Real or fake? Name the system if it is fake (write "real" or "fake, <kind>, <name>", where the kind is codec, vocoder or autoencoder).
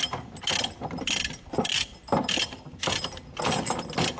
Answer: real